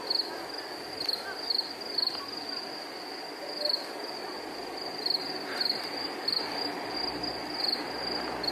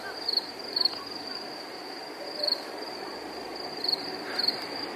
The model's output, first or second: second